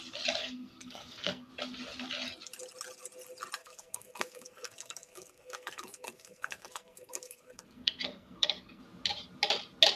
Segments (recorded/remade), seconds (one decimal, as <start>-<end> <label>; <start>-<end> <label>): 0.0-0.4 recorded; 0.4-1.5 remade; 1.5-3.6 recorded; 3.6-8.8 remade; 8.8-10.0 recorded